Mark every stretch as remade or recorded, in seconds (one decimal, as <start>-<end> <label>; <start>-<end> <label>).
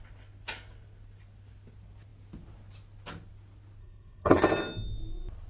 0.0-3.8 recorded; 3.8-4.4 remade; 4.4-5.5 recorded